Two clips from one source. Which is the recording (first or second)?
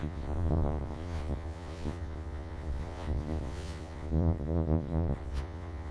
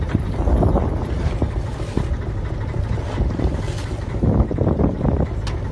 second